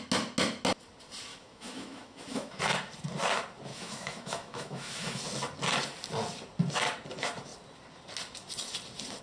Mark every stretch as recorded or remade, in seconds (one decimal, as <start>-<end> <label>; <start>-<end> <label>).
0.0-1.3 recorded; 1.3-2.6 remade; 2.6-3.7 recorded; 3.7-5.2 remade; 5.2-9.2 recorded